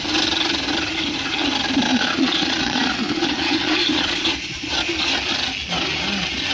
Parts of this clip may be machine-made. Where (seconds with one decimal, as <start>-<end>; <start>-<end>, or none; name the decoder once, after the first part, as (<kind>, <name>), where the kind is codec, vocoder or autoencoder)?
1.9-4.9 (vocoder, Vocos)